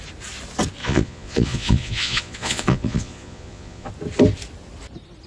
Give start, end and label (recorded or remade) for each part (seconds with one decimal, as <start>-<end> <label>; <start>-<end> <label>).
0.0-0.8 recorded; 0.8-3.9 remade; 3.9-5.3 recorded